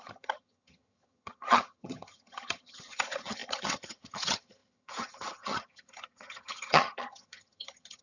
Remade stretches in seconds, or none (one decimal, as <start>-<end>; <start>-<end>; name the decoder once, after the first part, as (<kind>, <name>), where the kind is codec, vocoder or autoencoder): 0.0-8.0 (vocoder, HiFi-GAN)